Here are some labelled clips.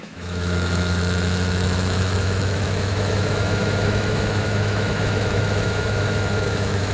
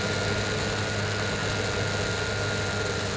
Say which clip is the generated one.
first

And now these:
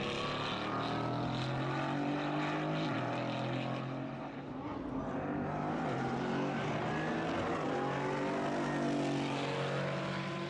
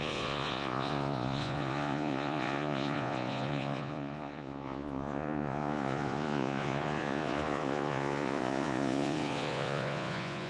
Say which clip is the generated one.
second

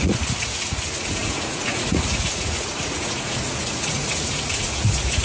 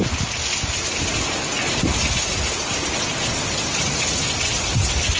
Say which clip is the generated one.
first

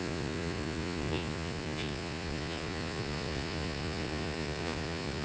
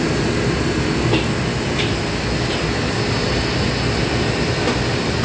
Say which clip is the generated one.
first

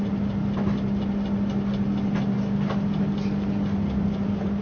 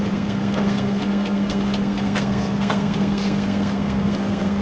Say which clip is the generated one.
second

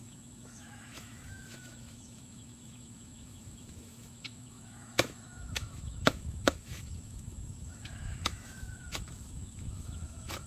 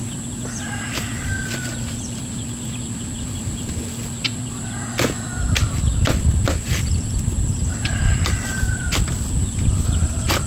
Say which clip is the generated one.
first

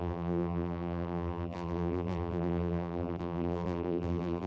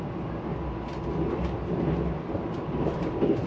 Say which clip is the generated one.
first